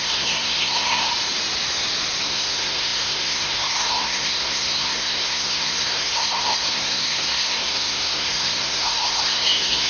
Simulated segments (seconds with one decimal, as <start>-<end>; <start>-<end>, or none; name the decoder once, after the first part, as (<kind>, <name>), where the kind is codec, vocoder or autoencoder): 0.0-1.1 (codec, SNAC); 2.2-9.9